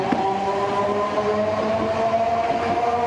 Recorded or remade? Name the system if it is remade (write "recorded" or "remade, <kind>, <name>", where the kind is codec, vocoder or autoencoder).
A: recorded